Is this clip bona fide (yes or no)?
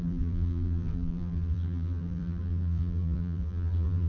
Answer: no